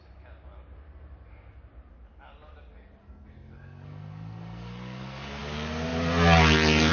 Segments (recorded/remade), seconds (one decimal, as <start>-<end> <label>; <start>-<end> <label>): 0.0-3.0 recorded; 3.0-5.4 remade; 5.4-6.9 recorded